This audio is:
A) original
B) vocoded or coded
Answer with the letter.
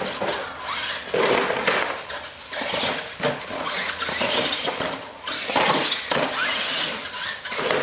A